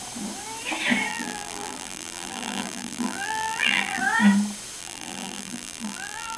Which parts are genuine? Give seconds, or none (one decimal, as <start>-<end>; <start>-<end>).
0.0-1.1; 4.0-4.8

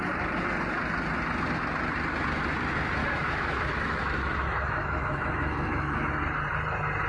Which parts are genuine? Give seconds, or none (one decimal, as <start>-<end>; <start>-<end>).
0.0-3.0; 6.1-7.1

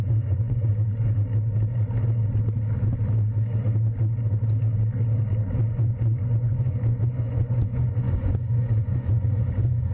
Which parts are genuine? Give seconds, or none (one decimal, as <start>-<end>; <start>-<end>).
0.7-5.7